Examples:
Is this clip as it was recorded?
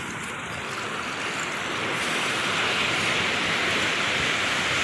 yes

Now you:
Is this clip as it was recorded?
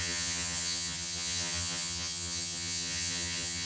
no